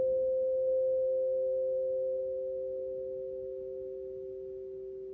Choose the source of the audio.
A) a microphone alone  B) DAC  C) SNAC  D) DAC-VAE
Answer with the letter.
A